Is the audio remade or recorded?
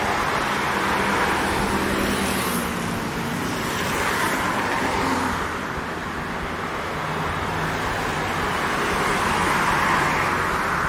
recorded